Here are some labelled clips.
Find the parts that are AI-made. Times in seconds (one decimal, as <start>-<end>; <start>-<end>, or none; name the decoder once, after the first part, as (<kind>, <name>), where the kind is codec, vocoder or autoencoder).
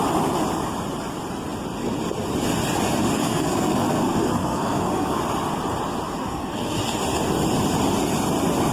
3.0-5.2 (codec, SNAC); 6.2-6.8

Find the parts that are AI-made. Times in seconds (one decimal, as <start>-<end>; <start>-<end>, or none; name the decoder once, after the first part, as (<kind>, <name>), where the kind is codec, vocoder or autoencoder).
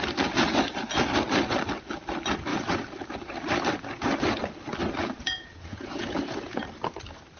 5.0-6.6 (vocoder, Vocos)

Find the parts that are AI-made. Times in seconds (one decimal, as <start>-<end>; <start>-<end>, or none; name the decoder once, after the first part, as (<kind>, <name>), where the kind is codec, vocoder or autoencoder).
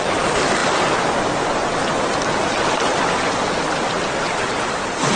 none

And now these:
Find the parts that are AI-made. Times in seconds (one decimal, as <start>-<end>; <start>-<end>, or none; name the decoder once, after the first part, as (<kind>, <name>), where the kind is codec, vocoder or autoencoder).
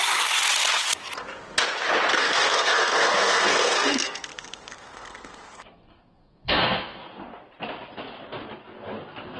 2.2-7.0 (codec, SNAC)